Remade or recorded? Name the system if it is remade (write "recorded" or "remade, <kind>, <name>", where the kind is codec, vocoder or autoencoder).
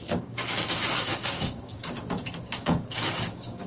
remade, codec, DAC